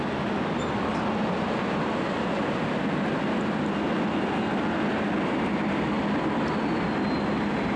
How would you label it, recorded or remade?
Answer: recorded